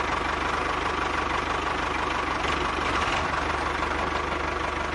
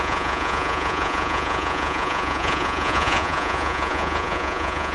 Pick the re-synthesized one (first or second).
second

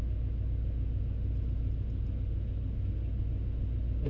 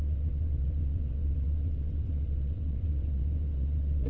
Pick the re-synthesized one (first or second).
second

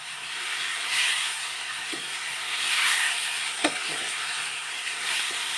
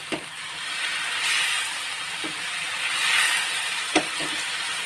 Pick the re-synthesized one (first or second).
first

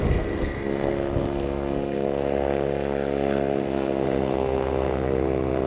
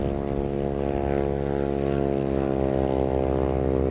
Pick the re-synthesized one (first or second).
first